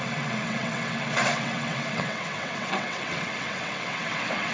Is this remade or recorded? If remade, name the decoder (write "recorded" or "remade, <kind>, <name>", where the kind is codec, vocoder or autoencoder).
remade, vocoder, WaveNeXt